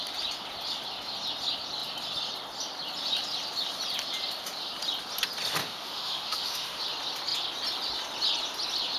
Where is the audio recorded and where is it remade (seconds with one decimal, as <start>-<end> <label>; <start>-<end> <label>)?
0.0-5.6 recorded; 5.6-6.8 remade; 6.8-9.0 recorded